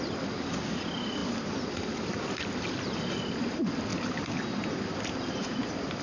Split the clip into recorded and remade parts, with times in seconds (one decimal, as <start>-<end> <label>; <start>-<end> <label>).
0.0-1.2 remade; 1.2-1.7 recorded; 1.7-3.9 remade; 3.9-5.3 recorded; 5.3-6.0 remade